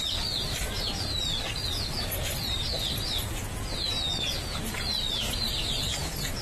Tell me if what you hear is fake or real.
real